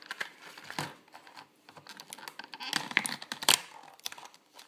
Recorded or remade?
recorded